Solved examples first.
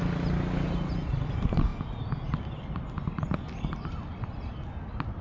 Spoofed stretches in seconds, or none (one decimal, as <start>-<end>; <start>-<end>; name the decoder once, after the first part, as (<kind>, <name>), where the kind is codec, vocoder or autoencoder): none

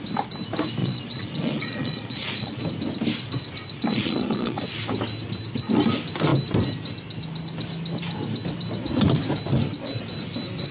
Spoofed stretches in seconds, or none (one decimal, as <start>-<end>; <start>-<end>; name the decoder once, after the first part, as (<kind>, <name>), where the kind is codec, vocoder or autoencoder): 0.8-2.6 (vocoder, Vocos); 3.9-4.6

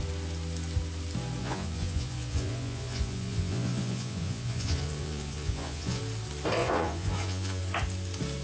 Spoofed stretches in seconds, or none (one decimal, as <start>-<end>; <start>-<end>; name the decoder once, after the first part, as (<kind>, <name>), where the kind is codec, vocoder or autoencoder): 1.4-6.0 (vocoder, Vocos); 6.6-7.6

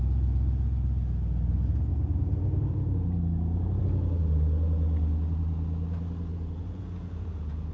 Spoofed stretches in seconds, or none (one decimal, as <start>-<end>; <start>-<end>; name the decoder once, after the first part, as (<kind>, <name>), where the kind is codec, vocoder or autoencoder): 1.9-3.8 (vocoder, Vocos); 6.3-7.7

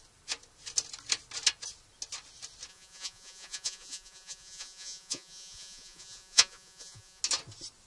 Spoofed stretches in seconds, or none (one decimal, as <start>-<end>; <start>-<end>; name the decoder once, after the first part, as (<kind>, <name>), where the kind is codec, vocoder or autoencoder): 2.7-7.2 (vocoder, Vocos)